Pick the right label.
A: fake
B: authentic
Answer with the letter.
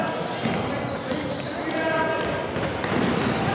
B